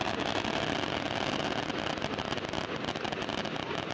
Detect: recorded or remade recorded